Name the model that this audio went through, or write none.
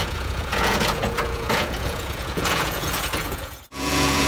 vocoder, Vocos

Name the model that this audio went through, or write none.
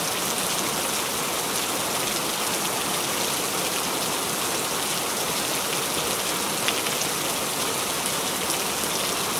none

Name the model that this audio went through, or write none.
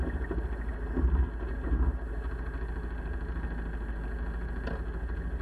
none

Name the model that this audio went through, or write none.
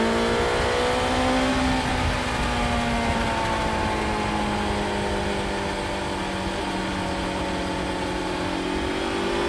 none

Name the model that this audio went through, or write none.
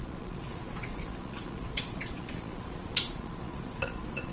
vocoder, Vocos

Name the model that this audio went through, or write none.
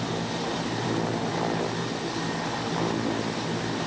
none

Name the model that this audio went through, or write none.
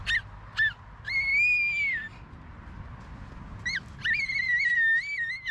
none